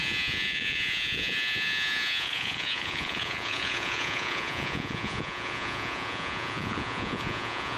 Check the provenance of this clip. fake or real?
fake